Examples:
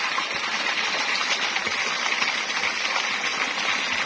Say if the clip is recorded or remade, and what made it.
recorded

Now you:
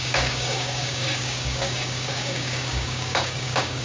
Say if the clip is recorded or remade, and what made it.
remade, codec, DAC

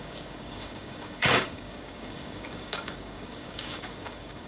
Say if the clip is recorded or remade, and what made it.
remade, codec, DAC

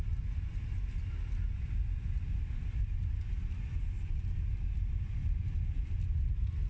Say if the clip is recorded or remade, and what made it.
recorded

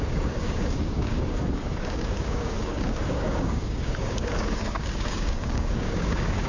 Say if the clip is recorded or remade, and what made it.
remade, codec, DAC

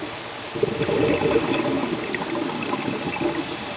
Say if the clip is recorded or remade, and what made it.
recorded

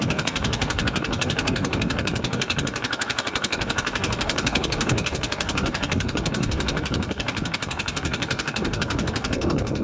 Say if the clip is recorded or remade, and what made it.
remade, codec, DAC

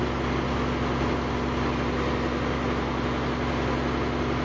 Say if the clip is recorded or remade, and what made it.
recorded